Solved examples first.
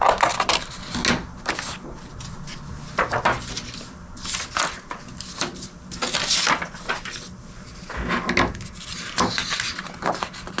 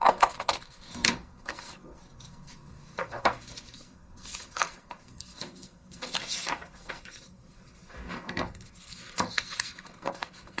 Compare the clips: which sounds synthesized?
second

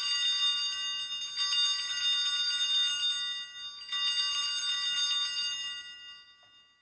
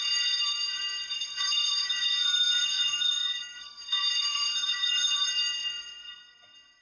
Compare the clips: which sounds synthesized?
second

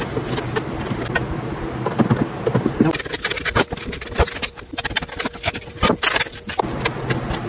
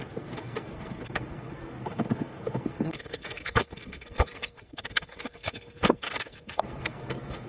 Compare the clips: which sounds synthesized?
second